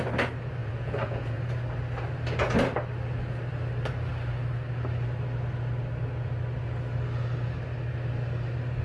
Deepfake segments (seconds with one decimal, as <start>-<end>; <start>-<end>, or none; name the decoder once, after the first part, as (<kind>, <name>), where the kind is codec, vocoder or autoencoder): 0.6-1.5 (vocoder, Vocos)